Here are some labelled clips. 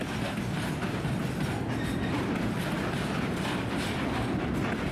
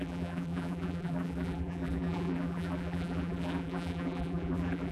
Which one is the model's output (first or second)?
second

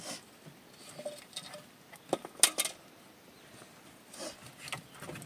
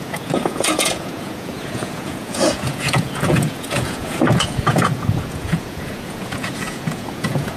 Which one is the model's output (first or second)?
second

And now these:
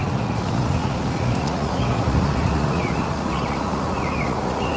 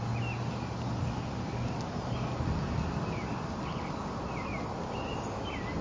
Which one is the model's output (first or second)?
first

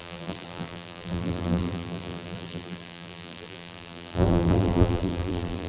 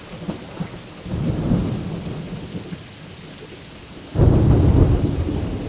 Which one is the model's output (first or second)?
first